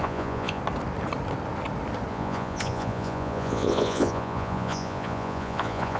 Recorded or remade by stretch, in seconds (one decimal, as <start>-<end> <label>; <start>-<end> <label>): 0.0-0.6 remade; 0.6-2.1 recorded; 2.1-6.0 remade

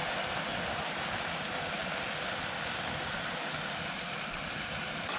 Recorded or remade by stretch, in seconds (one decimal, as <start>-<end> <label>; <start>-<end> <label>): 0.0-5.2 recorded

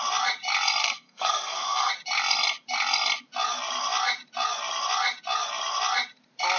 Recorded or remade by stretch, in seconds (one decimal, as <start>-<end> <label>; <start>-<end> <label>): 0.0-0.8 recorded; 0.8-1.9 remade; 1.9-6.6 recorded

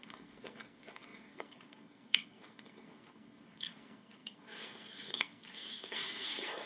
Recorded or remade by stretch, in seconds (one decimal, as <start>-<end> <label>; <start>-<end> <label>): 0.0-6.7 remade